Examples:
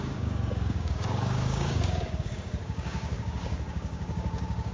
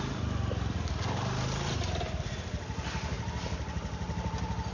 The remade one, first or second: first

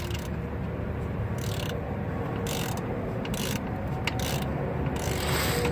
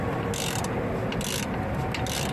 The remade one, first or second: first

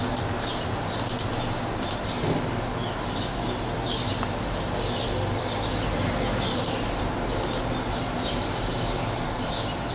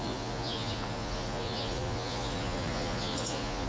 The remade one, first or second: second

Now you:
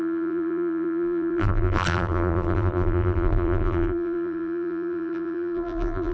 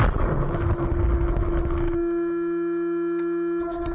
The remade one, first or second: first